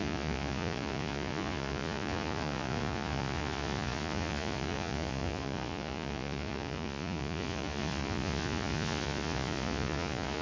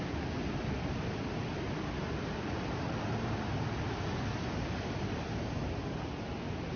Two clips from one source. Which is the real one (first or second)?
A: second